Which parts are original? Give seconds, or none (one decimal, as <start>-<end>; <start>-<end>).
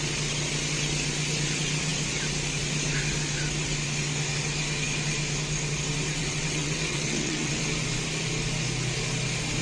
0.0-6.2; 7.6-9.6